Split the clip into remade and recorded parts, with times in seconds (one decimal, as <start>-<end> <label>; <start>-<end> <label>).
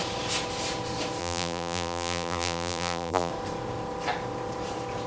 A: 0.0-1.2 recorded; 1.2-3.3 remade; 3.3-5.1 recorded